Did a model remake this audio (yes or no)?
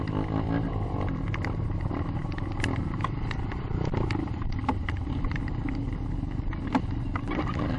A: no